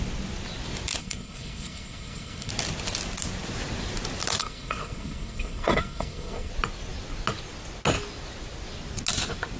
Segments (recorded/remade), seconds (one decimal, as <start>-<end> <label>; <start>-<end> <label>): 0.0-1.0 recorded; 1.0-2.5 remade; 2.5-4.4 recorded; 4.4-6.5 remade; 6.5-9.6 recorded